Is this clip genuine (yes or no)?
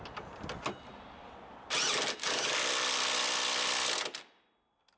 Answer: yes